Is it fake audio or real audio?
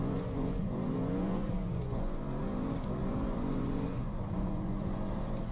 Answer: fake